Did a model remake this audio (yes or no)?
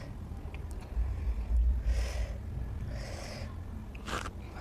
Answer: yes